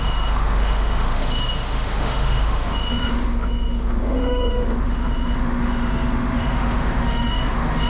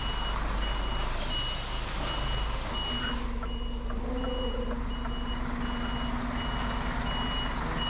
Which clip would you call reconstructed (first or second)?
first